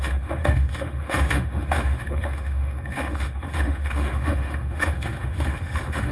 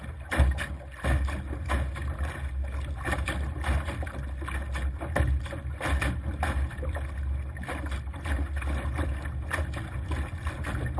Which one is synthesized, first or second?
first